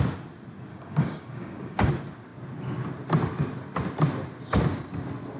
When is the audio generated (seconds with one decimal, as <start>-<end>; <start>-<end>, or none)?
0.7-1.9